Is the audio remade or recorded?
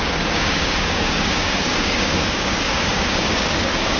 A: remade